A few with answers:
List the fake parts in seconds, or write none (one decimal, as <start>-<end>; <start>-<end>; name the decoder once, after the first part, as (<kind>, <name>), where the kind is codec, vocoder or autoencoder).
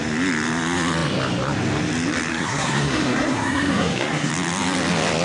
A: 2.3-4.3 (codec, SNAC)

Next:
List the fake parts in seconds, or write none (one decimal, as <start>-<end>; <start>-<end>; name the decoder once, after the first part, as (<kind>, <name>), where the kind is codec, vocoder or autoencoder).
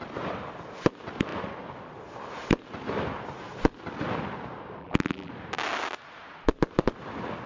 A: 4.8-5.3 (vocoder, BigVGAN v2)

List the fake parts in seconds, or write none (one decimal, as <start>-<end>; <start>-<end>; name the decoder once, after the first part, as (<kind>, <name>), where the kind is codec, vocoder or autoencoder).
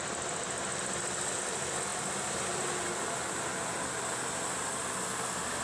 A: none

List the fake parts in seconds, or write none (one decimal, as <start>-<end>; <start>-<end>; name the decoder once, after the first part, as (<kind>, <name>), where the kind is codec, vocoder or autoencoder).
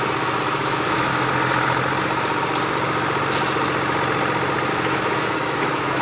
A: 0.0-1.1 (autoencoder, DAC-VAE); 4.7-6.0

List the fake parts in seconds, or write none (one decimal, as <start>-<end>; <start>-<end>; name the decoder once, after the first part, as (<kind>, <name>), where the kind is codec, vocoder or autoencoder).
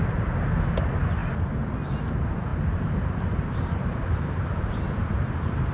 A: 2.5-5.7 (vocoder, BigVGAN v2)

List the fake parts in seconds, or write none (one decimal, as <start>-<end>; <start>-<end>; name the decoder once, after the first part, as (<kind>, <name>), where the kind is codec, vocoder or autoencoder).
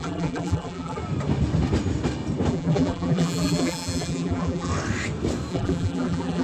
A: 0.0-1.0 (vocoder, BigVGAN v2); 2.5-4.7; 5.5-6.4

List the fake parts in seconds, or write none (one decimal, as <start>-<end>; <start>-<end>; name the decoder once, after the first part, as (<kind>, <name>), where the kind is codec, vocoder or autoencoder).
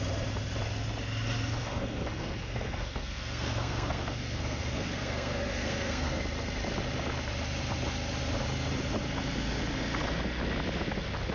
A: 1.6-6.2 (codec, SNAC)